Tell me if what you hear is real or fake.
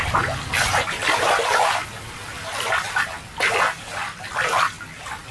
real